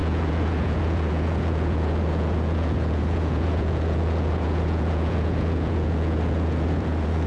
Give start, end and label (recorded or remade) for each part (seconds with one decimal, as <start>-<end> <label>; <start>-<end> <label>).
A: 0.0-7.3 remade